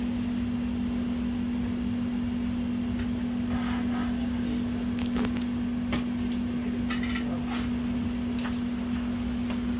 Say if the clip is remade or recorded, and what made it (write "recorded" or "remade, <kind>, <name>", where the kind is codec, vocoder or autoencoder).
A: recorded